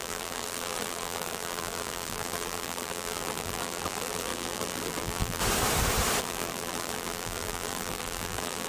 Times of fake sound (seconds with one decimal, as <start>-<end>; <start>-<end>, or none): 0.0-5.4; 6.2-8.7